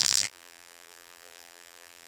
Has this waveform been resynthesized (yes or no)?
yes